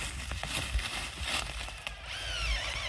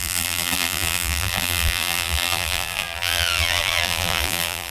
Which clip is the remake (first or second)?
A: second